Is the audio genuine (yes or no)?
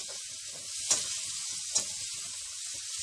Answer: no